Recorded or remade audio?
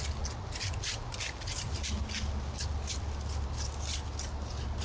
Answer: recorded